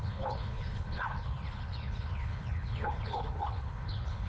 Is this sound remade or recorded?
remade